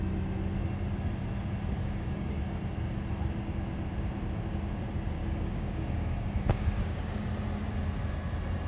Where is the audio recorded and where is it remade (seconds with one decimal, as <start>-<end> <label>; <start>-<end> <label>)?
0.0-1.8 recorded; 1.8-2.4 remade; 2.4-5.2 recorded; 5.2-7.2 remade; 7.2-8.7 recorded